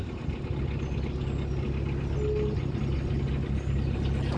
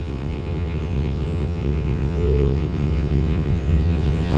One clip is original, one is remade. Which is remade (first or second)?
second